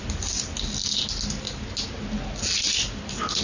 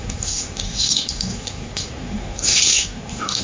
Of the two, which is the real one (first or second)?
first